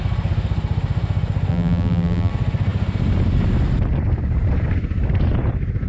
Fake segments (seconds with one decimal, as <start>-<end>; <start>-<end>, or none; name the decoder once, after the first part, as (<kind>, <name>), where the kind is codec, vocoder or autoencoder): 1.5-2.3 (vocoder, BigVGAN v2)